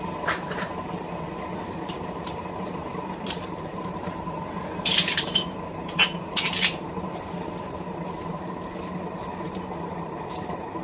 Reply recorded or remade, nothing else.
remade